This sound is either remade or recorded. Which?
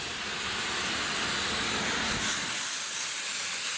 recorded